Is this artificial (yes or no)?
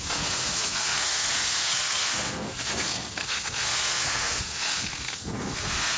yes